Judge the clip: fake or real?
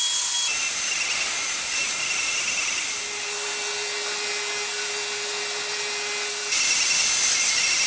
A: real